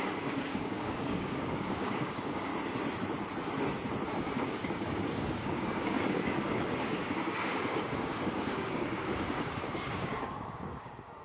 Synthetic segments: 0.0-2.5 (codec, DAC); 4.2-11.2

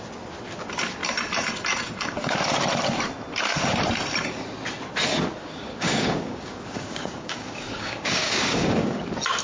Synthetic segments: 5.4-9.0 (codec, DAC)

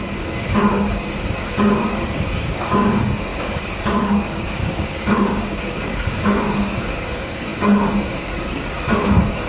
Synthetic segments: 0.0-9.5 (codec, DAC)

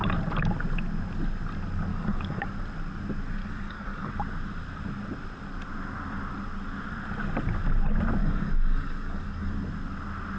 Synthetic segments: 1.9-2.5 (codec, DAC); 3.4-4.1; 8.2-9.5